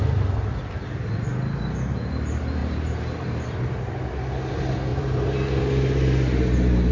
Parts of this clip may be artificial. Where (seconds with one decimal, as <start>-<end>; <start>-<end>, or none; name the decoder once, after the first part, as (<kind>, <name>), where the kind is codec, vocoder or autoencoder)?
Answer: 2.6-3.6 (vocoder, BigVGAN v2); 4.9-5.6